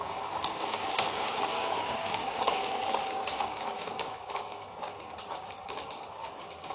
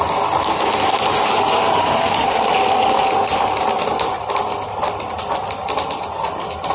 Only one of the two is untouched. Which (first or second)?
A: second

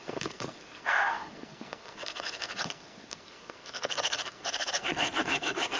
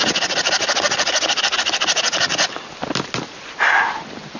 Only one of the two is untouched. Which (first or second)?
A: second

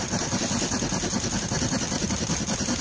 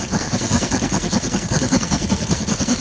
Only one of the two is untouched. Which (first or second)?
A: first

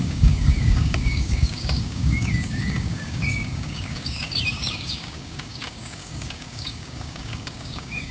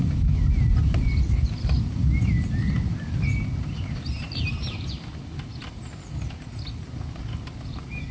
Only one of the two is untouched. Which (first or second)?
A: second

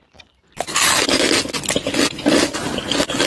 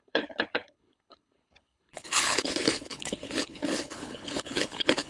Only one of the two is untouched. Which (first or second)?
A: first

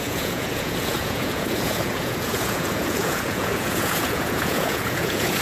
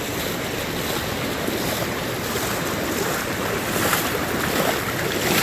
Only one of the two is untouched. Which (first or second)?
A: second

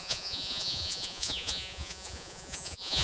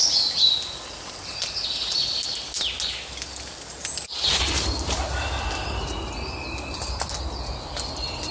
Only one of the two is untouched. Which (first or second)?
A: second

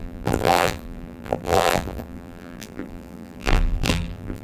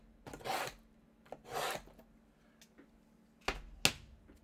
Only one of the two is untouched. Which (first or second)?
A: second